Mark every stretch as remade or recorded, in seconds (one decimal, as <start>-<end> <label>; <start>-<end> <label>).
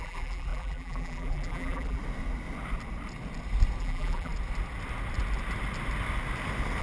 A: 0.0-2.0 remade; 2.0-3.8 recorded; 3.8-4.3 remade; 4.3-6.8 recorded